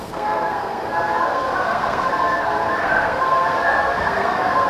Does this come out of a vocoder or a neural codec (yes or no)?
yes